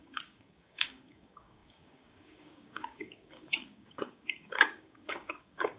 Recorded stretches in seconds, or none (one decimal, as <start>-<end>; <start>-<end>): none